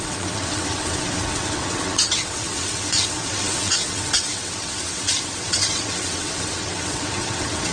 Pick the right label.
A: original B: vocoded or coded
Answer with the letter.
B